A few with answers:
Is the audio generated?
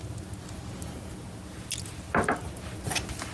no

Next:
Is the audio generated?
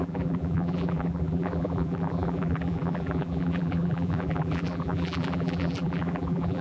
yes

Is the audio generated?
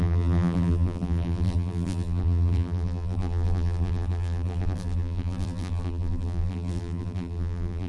yes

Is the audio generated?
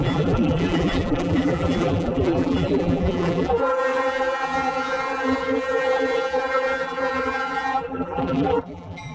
yes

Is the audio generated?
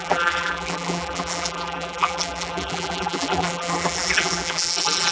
yes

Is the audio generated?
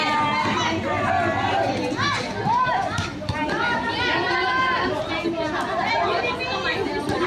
no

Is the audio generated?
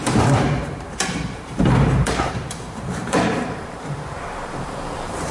yes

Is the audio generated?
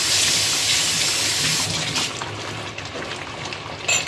no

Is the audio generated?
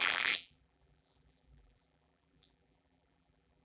yes